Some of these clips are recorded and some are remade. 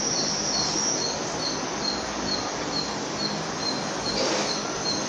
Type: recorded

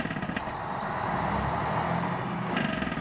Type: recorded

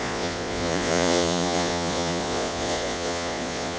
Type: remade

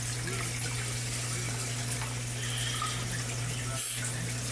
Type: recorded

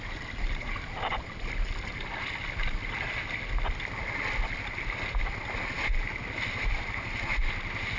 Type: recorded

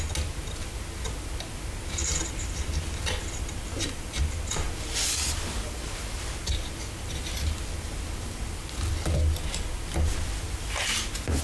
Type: recorded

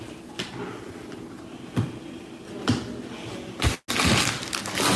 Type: recorded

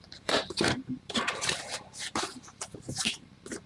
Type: remade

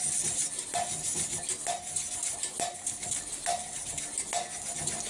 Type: recorded